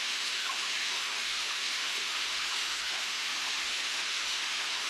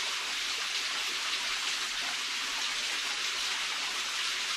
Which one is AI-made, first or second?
first